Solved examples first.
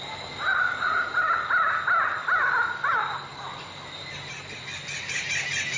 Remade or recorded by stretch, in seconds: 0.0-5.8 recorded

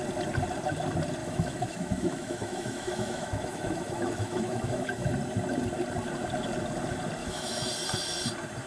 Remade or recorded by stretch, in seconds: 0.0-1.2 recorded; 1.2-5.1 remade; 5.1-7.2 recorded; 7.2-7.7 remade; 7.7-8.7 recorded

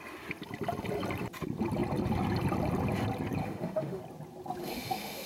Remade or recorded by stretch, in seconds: 0.0-3.4 recorded; 3.4-4.0 remade; 4.0-4.6 recorded; 4.6-5.3 remade